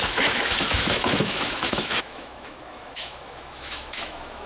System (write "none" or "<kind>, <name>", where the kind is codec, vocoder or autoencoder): autoencoder, DAC-VAE